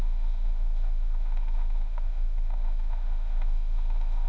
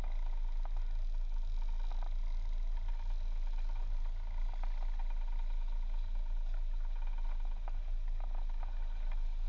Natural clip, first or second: second